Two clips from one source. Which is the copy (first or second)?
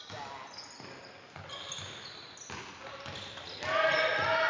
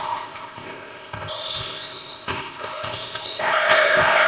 second